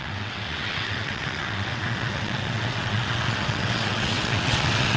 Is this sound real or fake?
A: fake